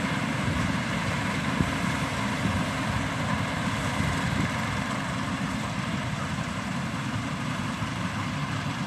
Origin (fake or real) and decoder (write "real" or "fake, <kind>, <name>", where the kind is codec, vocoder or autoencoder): fake, vocoder, BigVGAN v2